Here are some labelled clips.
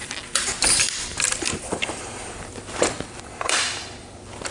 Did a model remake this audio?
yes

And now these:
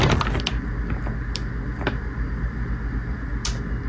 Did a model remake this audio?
no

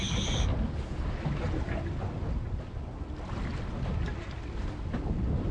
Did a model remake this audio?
no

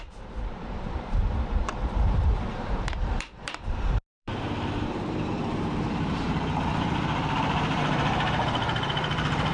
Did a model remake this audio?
yes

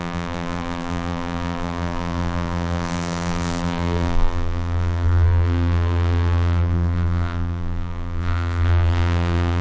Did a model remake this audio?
yes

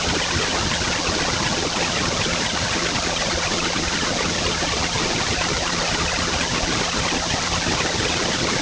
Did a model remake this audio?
yes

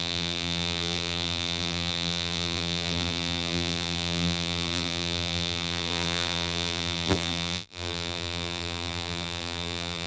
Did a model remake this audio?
yes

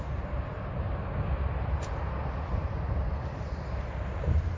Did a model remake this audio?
yes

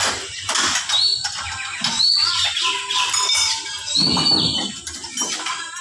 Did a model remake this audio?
yes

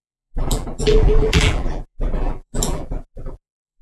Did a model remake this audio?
yes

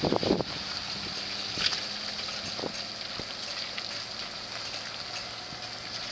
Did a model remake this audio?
no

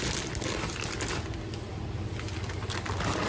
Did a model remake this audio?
no